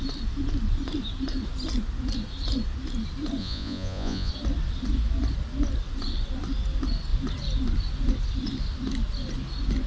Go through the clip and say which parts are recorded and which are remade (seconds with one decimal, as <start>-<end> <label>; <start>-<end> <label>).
0.0-3.4 recorded; 3.4-4.3 remade; 4.3-9.9 recorded